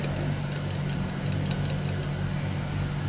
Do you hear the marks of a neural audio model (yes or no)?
no